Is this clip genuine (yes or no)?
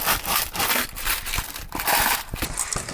yes